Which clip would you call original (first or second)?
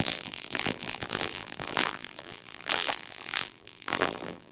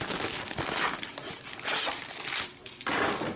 second